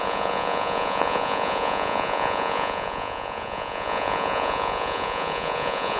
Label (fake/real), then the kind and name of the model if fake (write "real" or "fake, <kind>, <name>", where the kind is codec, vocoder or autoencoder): fake, vocoder, Vocos